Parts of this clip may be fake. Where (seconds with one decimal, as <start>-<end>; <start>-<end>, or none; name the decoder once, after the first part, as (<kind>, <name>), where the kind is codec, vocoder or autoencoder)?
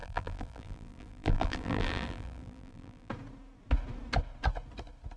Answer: 0.0-3.1 (vocoder, BigVGAN v2)